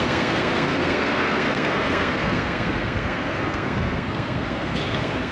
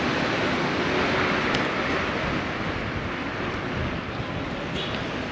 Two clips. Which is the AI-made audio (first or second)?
first